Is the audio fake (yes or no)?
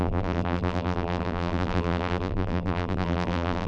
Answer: yes